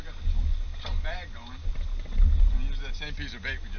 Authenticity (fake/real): real